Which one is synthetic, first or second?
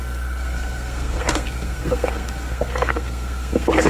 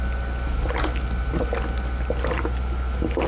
first